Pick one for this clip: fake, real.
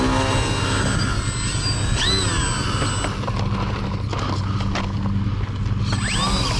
real